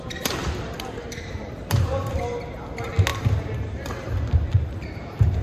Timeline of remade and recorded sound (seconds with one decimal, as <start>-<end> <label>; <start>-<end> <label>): 0.0-0.4 recorded; 0.4-2.2 remade; 2.2-3.1 recorded; 3.1-5.4 remade